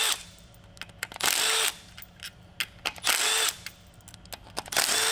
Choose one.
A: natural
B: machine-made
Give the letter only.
A